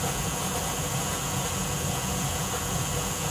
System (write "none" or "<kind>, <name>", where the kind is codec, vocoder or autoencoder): vocoder, Vocos